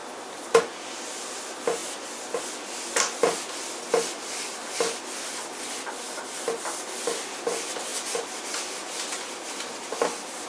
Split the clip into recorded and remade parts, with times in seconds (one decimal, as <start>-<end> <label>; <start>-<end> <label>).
0.0-10.5 recorded